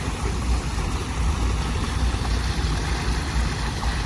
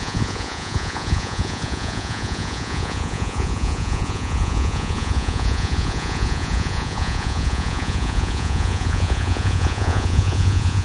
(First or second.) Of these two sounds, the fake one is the second